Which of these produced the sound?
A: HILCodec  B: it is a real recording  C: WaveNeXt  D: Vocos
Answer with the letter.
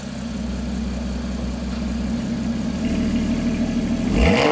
B